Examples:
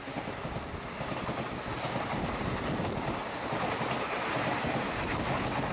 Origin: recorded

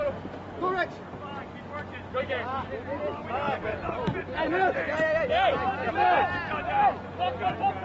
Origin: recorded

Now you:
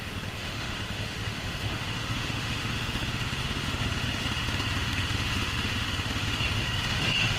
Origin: remade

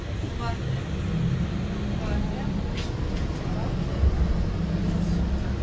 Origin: recorded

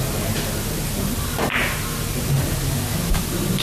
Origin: recorded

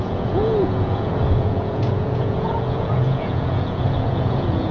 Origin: remade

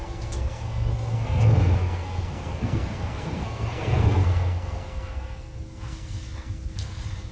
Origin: remade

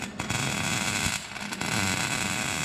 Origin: recorded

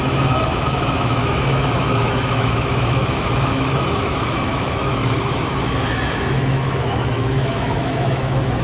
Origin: remade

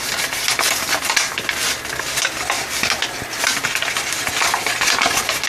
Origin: recorded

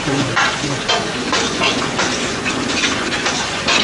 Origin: remade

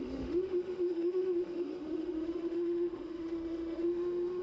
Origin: remade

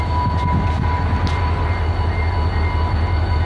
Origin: recorded